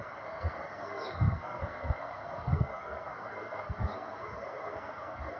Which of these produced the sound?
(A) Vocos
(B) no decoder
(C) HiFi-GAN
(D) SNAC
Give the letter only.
D